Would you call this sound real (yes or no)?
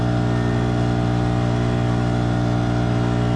yes